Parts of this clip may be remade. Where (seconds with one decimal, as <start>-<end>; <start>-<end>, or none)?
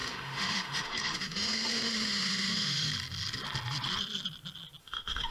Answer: 0.0-2.9; 4.8-5.3